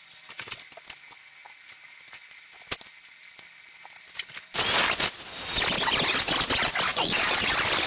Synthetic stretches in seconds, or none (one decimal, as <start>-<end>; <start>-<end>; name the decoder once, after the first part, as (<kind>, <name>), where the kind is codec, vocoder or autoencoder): 6.9-7.5 (vocoder, Vocos)